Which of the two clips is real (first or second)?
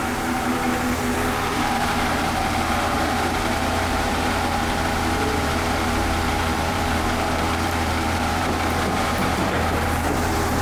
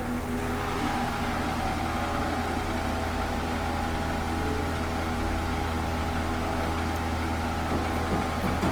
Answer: second